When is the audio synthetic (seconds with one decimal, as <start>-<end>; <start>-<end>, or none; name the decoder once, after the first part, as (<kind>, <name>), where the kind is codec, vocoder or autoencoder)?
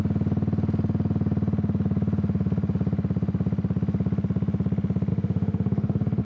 5.1-6.2 (autoencoder, DAC-VAE)